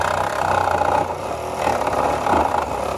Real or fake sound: real